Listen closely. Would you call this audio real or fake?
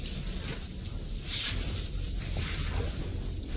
real